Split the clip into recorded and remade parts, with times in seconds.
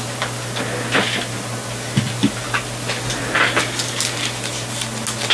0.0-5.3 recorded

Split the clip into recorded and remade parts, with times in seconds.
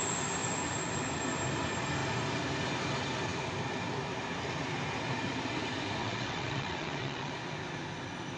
0.0-6.0 recorded; 6.0-7.3 remade; 7.3-8.4 recorded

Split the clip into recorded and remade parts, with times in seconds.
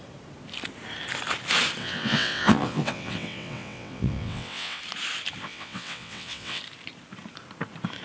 0.0-1.8 recorded; 1.8-4.8 remade; 4.8-5.4 recorded; 5.4-6.6 remade; 6.6-8.0 recorded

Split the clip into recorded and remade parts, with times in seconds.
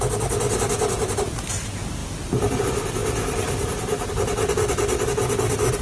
0.0-5.8 recorded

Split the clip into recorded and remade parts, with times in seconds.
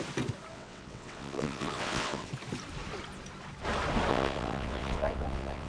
0.0-0.5 recorded; 0.5-2.3 remade; 2.3-4.1 recorded; 4.1-5.7 remade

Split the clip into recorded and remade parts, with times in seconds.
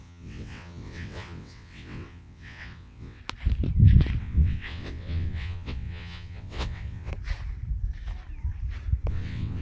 0.0-3.2 remade; 3.2-4.2 recorded; 4.2-7.1 remade; 7.1-9.1 recorded; 9.1-9.6 remade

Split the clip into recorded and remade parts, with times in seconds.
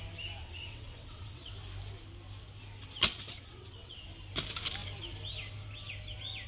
0.0-0.4 recorded; 0.4-1.5 remade; 1.5-3.1 recorded; 3.1-4.1 remade; 4.1-6.5 recorded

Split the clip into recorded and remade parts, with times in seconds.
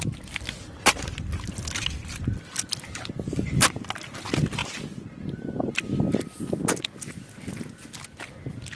0.0-8.8 recorded